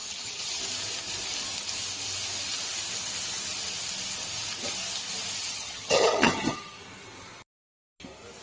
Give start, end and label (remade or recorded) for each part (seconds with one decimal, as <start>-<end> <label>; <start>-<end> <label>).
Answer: 0.0-0.6 remade; 0.6-5.4 recorded; 5.4-6.8 remade; 6.8-8.4 recorded